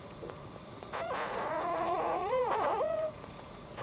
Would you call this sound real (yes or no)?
no